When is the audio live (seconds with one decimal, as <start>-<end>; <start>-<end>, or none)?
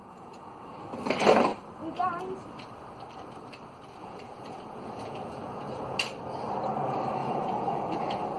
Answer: 0.8-4.0; 6.0-7.2